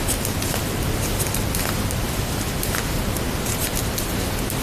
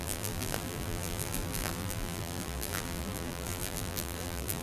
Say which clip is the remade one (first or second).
second